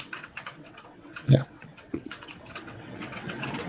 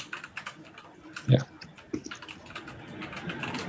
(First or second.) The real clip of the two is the second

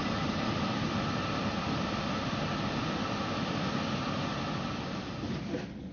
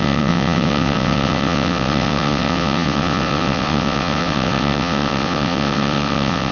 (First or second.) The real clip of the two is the first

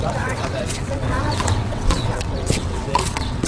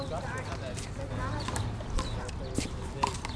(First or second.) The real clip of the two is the second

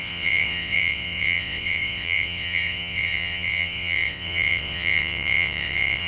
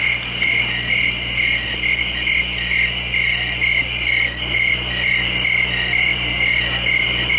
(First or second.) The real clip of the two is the second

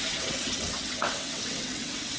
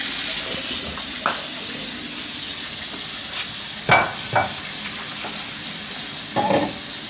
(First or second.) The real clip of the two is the second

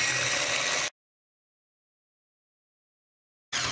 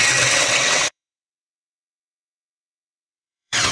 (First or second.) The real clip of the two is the first